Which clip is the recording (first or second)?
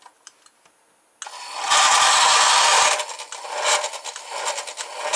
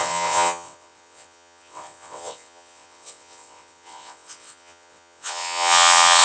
first